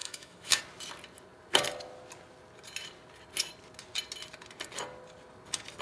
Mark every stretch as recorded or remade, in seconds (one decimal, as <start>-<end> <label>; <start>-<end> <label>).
0.0-0.6 remade; 0.6-5.8 recorded